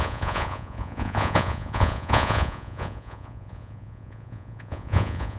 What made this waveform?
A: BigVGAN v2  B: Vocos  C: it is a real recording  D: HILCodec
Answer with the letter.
B